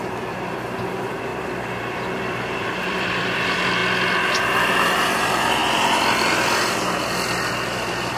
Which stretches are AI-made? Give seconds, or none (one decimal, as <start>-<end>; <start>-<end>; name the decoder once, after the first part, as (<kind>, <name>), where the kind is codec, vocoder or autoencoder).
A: 0.0-1.3 (vocoder, BigVGAN v2); 1.8-3.8; 4.4-5.6; 7.5-8.2